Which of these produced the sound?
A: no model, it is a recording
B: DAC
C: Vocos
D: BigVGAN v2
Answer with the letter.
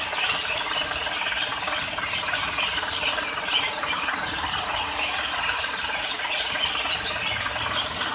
A